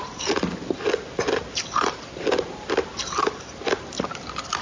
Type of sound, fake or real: real